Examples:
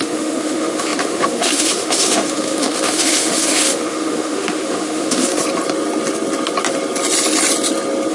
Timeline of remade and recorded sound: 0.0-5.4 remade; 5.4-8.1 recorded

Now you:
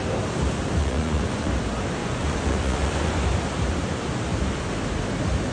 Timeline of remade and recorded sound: 0.0-0.8 recorded; 0.8-1.5 remade; 1.5-2.0 recorded; 2.0-3.2 remade; 3.2-5.5 recorded

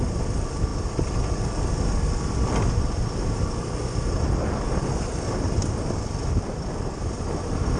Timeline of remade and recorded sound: 0.0-7.8 recorded

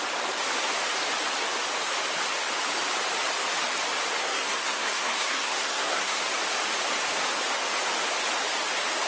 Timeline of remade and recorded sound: 0.0-4.2 recorded; 4.2-6.2 remade; 6.2-9.1 recorded

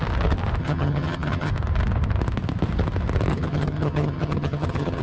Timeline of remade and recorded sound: 0.0-0.6 recorded; 0.6-1.5 remade; 1.5-3.3 recorded; 3.3-5.0 remade

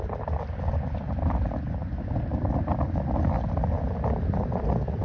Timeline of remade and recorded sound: 0.0-5.0 recorded

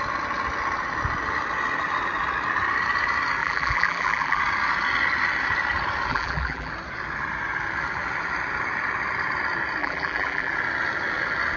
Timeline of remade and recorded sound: 0.0-3.4 recorded; 3.4-4.4 remade; 4.4-6.1 recorded; 6.1-6.7 remade; 6.7-9.8 recorded; 9.8-10.5 remade; 10.5-11.6 recorded